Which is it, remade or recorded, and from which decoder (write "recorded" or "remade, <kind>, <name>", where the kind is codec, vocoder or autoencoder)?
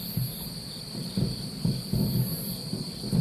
recorded